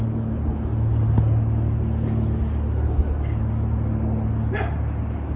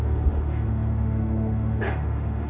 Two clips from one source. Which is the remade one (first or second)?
second